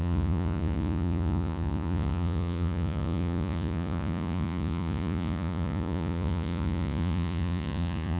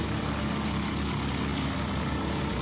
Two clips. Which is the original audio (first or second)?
second